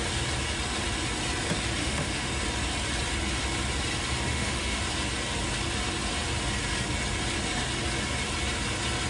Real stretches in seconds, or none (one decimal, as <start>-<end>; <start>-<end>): 0.0-1.8; 2.3-4.3; 4.8-9.1